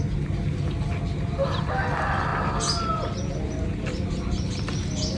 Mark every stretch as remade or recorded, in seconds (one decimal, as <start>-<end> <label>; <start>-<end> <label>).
0.0-5.2 recorded